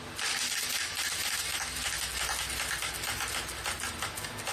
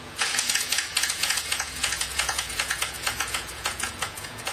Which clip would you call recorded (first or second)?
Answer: first